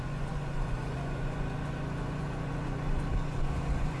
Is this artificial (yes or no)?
yes